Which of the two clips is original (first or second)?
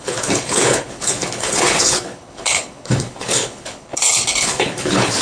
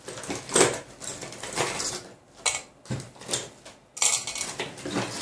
second